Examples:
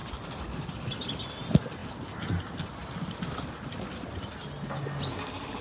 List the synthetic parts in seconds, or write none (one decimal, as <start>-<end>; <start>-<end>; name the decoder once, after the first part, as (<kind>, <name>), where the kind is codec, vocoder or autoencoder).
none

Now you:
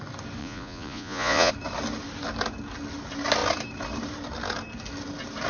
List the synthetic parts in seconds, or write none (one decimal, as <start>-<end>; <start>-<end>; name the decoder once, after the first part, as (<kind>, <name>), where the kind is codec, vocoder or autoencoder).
0.4-1.5 (vocoder, Vocos)

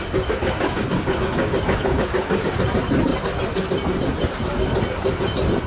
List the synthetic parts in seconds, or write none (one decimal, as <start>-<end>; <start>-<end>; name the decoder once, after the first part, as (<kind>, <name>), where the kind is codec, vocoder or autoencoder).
0.4-2.5 (codec, DAC)

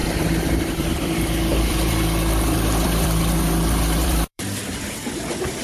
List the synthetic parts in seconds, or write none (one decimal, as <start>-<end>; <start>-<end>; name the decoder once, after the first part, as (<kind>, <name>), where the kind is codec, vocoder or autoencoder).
0.0-3.4 (vocoder, BigVGAN v2); 4.0-5.6